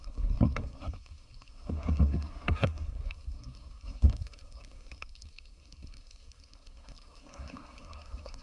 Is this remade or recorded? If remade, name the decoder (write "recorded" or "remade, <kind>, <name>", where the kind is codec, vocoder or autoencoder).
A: remade, codec, SNAC